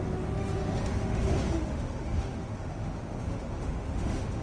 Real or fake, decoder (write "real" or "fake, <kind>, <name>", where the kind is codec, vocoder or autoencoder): fake, autoencoder, DAC-VAE